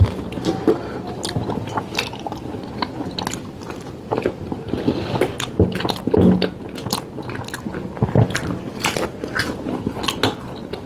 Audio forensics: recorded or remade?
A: recorded